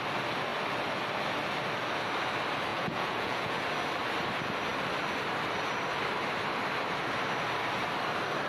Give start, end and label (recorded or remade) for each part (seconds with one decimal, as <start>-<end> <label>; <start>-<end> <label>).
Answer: 0.0-2.7 recorded; 2.7-3.6 remade; 3.6-8.5 recorded